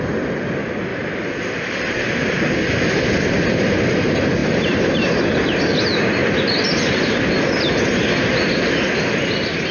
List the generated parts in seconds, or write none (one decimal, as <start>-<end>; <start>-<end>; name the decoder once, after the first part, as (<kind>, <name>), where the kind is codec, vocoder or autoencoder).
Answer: 0.9-2.4 (vocoder, BigVGAN v2); 4.4-5.2